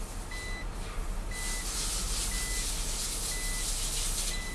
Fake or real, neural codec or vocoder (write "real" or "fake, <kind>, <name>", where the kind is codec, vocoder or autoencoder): real